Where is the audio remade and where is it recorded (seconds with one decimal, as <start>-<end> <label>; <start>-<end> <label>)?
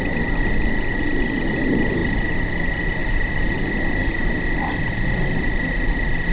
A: 0.0-3.0 recorded; 3.0-4.9 remade; 4.9-6.3 recorded